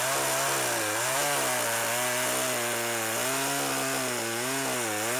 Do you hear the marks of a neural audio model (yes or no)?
no